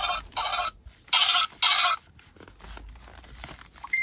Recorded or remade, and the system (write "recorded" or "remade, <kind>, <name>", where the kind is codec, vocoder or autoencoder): recorded